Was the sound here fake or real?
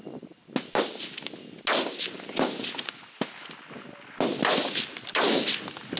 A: real